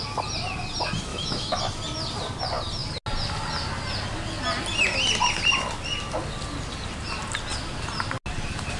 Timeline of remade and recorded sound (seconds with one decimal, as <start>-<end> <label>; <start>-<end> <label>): 0.0-1.1 recorded; 1.1-1.6 remade; 1.6-8.8 recorded